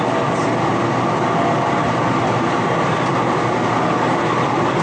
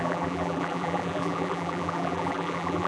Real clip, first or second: first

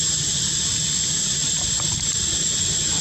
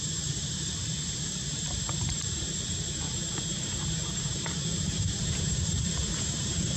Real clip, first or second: first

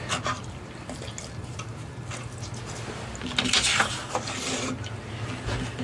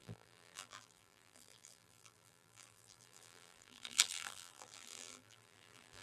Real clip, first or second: first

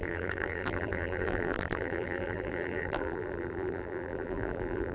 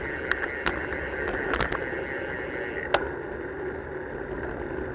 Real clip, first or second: second